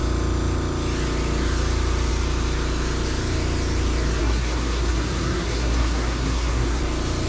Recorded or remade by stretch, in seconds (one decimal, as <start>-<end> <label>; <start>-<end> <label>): 0.0-4.2 recorded; 4.2-6.8 remade; 6.8-7.3 recorded